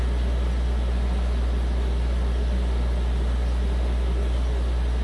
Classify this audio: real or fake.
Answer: real